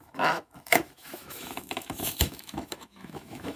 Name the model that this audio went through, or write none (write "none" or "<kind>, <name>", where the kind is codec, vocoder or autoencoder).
autoencoder, DAC-VAE